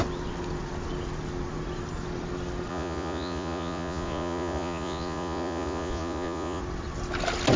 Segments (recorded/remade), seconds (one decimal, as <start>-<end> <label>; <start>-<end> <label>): 0.0-2.7 recorded; 2.7-6.6 remade; 6.6-7.6 recorded